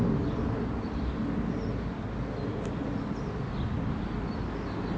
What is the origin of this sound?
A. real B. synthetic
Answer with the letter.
A